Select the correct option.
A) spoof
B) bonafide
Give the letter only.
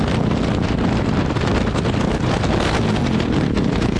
B